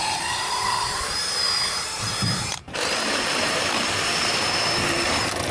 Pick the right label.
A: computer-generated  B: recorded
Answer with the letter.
A